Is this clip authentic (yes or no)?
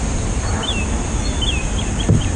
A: yes